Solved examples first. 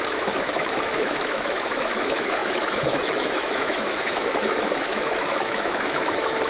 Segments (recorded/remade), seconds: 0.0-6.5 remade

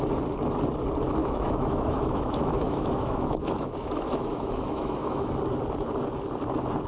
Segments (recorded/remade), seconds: 0.0-1.2 recorded; 1.2-5.3 remade; 5.3-6.9 recorded

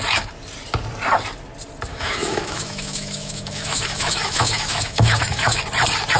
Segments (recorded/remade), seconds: 0.0-1.9 recorded; 1.9-5.6 remade; 5.6-6.2 recorded

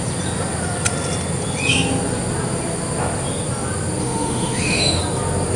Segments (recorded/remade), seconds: 0.0-4.0 recorded; 4.0-5.0 remade; 5.0-5.6 recorded

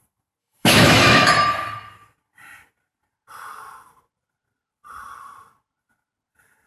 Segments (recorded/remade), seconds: 0.0-0.4 recorded; 0.4-1.3 remade; 1.3-6.7 recorded

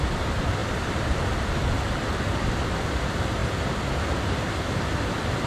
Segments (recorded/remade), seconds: 0.0-5.5 recorded

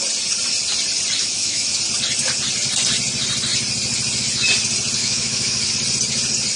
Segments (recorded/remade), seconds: 0.0-1.2 recorded; 1.2-1.8 remade; 1.8-5.0 recorded; 5.0-5.7 remade; 5.7-6.6 recorded